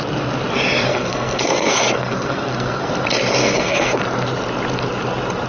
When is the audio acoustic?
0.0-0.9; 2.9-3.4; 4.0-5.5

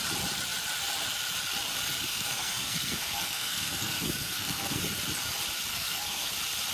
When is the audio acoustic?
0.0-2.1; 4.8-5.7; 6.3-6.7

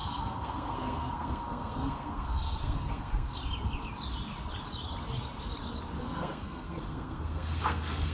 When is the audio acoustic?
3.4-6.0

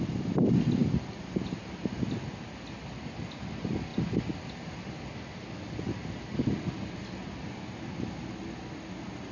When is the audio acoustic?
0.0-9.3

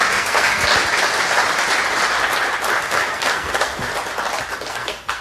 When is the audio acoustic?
0.7-2.8; 3.9-4.7

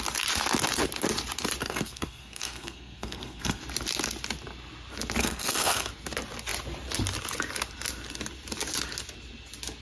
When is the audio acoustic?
0.0-1.6; 3.6-5.2; 5.9-9.8

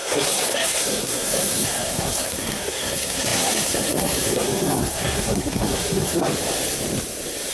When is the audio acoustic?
6.3-7.5